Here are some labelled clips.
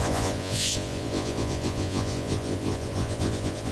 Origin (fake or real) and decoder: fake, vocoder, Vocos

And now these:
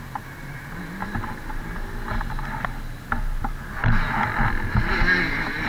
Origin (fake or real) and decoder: real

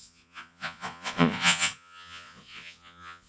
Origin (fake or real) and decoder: fake, vocoder, Vocos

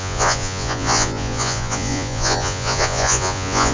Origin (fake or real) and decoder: fake, vocoder, Vocos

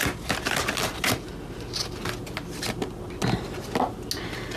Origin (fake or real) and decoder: real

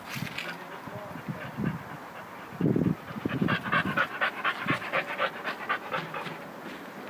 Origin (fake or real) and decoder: real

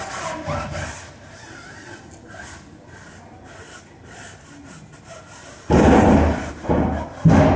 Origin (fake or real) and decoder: real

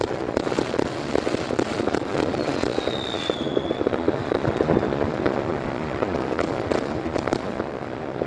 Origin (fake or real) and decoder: fake, vocoder, Vocos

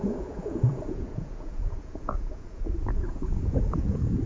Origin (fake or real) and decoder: fake, vocoder, Vocos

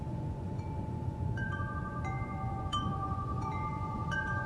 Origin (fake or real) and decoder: fake, vocoder, Vocos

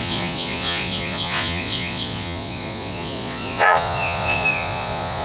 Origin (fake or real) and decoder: fake, vocoder, Vocos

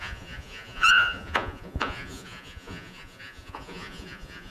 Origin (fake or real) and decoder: fake, vocoder, Vocos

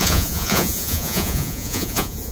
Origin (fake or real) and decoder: fake, vocoder, Vocos